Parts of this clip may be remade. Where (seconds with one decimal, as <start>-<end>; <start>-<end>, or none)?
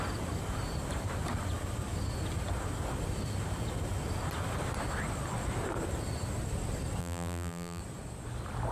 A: 7.0-7.8